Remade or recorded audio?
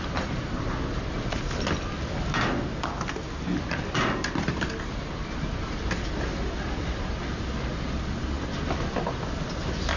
recorded